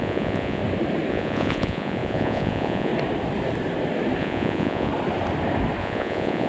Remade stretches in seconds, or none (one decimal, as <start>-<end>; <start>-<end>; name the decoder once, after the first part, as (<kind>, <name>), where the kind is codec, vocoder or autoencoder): 0.0-0.6 (vocoder, Vocos); 1.1-2.9; 4.2-4.9; 5.8-6.5